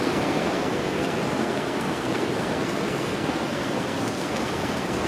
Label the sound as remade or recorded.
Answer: remade